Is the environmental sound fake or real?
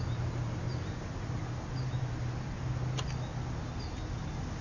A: real